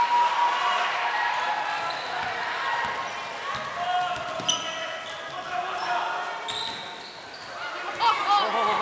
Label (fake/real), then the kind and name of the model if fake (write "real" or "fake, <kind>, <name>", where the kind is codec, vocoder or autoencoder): real